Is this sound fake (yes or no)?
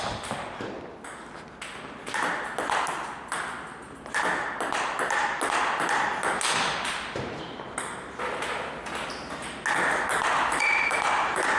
no